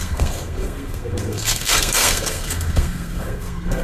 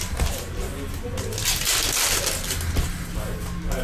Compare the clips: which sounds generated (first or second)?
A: first